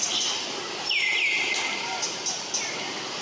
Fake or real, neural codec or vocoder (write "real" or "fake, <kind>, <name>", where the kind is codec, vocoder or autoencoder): real